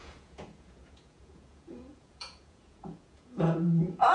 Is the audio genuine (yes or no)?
no